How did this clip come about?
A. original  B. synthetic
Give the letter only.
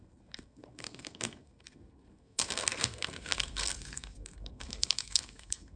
B